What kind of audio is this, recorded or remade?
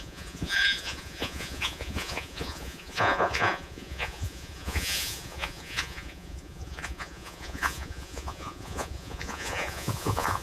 remade